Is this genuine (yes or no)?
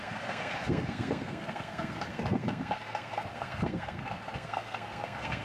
no